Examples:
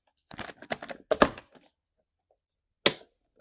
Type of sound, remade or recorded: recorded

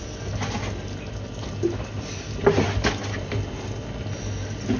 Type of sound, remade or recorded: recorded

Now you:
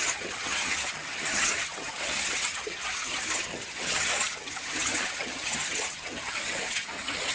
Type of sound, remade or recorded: remade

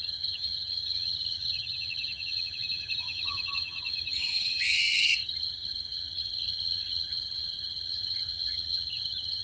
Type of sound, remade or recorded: remade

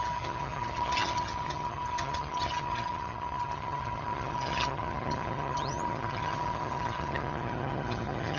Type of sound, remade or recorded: remade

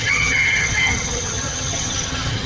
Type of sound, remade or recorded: remade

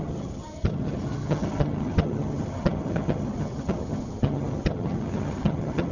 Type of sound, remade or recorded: remade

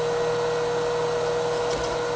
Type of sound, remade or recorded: recorded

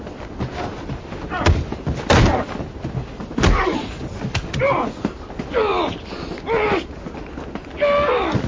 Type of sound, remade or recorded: recorded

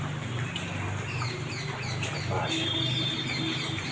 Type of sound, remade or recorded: recorded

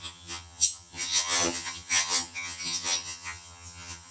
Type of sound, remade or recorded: remade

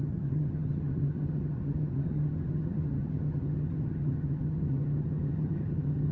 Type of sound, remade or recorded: remade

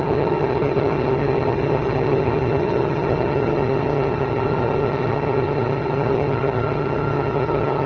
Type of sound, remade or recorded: remade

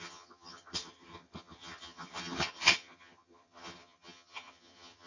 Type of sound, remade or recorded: remade